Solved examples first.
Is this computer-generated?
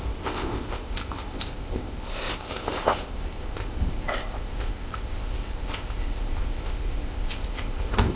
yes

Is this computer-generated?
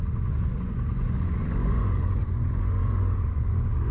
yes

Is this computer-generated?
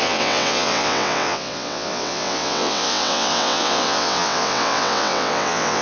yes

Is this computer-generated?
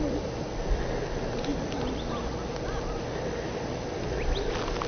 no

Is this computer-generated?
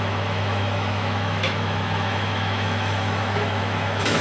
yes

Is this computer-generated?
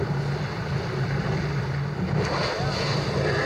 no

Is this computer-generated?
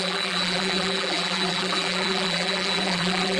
yes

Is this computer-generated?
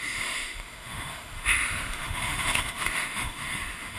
yes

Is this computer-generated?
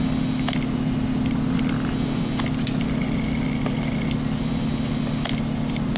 no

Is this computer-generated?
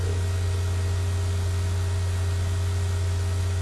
no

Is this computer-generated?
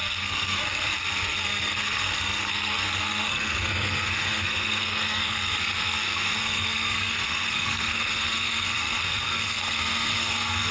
yes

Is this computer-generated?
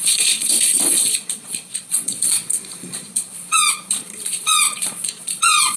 yes